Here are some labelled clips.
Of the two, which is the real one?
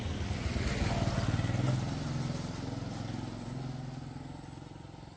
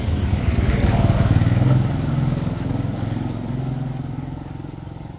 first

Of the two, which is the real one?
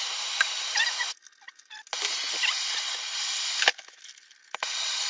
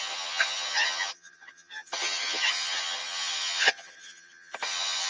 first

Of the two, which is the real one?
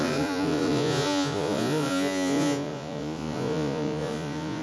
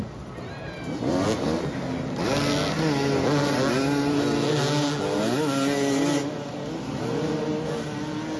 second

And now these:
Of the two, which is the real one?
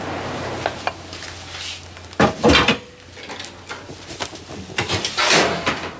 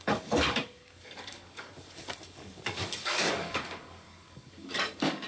first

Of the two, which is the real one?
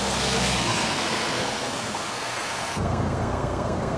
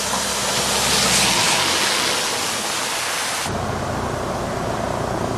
second